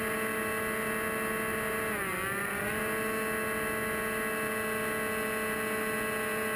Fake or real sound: real